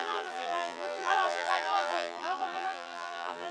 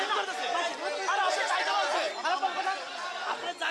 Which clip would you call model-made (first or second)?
first